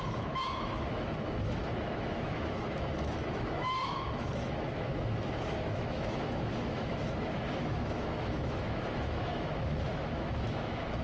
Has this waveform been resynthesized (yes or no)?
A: yes